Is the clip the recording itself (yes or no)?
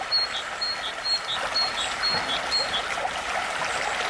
yes